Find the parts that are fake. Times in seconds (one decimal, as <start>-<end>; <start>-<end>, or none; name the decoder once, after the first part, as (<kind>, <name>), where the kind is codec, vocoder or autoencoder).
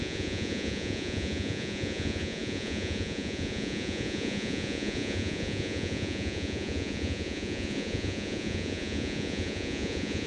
0.0-10.3 (vocoder, Vocos)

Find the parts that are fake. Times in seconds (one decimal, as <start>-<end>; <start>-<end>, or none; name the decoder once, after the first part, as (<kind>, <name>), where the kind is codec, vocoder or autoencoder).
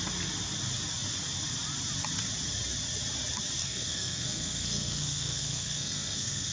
3.6-6.5 (codec, SNAC)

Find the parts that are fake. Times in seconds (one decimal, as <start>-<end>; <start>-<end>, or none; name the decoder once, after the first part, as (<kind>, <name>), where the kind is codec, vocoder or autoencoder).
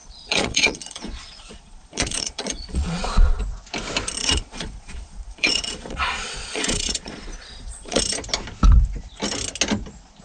0.0-3.4 (vocoder, Vocos); 4.2-8.0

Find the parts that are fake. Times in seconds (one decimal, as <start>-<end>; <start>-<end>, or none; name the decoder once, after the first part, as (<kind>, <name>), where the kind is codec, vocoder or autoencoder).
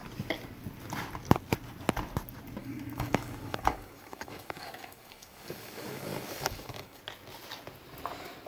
2.6-7.0 (codec, DAC)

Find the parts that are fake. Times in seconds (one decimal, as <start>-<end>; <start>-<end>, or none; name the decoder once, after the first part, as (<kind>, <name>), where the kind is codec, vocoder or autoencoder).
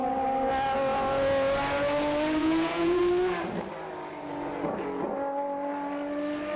2.4-3.0 (vocoder, Vocos)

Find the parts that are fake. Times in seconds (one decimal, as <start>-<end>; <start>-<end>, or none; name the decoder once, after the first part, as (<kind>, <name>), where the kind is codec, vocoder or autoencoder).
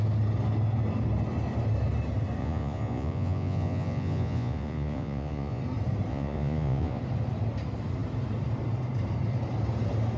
2.4-5.6 (vocoder, Vocos); 6.1-7.0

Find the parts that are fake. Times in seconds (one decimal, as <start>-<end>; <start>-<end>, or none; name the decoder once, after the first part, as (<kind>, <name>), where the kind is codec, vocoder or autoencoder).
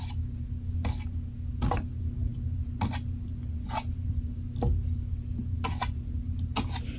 none